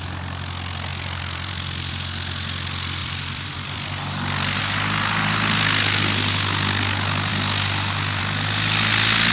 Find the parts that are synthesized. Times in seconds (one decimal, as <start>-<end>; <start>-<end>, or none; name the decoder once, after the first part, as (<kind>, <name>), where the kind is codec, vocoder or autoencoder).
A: 0.9-1.9 (vocoder, BigVGAN v2); 3.0-4.6